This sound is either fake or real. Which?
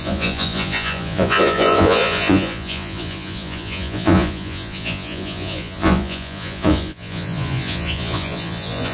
fake